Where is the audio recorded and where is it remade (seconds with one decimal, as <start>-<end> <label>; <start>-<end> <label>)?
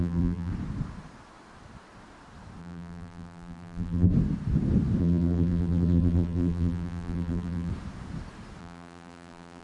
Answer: 0.0-0.5 remade; 0.5-2.6 recorded; 2.6-4.1 remade; 4.1-5.0 recorded; 5.0-7.7 remade; 7.7-8.6 recorded; 8.6-9.6 remade